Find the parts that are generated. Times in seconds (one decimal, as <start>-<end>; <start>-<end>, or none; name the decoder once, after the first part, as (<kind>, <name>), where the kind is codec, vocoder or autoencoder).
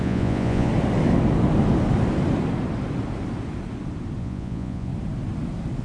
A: 0.0-0.7 (vocoder, Vocos); 4.2-4.9